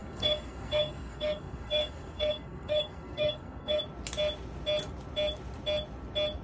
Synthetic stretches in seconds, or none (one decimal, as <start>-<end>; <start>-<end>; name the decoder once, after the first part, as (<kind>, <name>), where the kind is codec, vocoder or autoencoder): 0.0-3.8 (codec, SNAC)